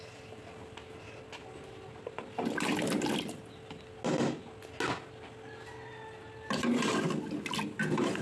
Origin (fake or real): real